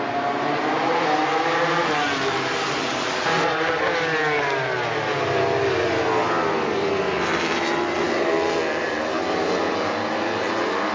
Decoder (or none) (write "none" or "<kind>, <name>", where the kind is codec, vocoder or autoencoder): none